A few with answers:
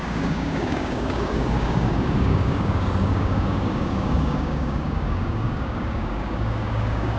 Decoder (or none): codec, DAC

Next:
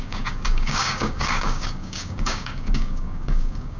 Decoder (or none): codec, DAC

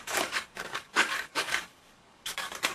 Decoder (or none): codec, DAC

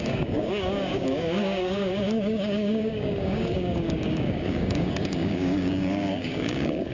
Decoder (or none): codec, DAC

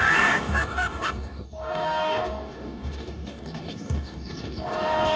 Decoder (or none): codec, DAC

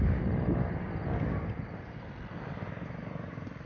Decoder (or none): none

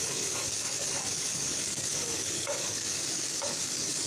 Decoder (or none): codec, DAC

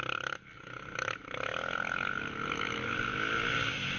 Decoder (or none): none